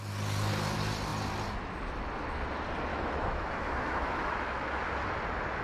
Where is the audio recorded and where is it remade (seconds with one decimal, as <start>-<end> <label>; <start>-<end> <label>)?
0.0-2.9 recorded; 2.9-4.8 remade; 4.8-5.6 recorded